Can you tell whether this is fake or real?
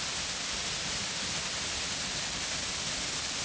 real